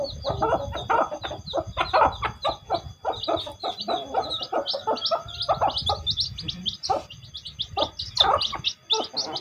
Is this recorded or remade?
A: recorded